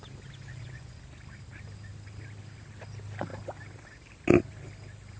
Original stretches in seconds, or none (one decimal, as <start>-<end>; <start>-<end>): 0.0-0.5; 1.0-5.2